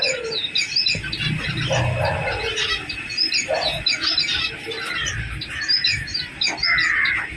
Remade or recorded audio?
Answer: recorded